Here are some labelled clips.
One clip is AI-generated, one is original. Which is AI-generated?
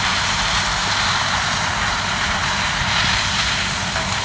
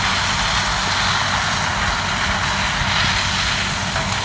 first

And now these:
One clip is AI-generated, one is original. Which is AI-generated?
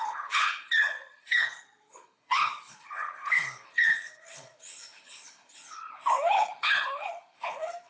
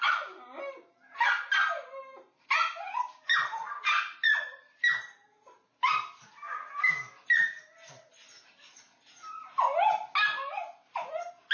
first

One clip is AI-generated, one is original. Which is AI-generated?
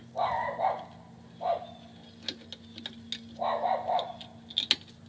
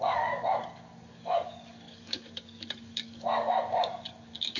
second